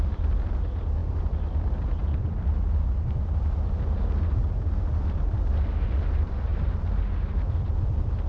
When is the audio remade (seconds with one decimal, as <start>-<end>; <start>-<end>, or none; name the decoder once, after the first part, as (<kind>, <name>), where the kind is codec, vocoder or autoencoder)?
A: none